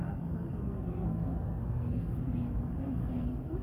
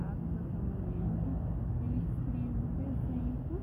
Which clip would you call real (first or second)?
second